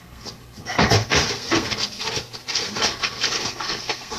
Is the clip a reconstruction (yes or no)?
yes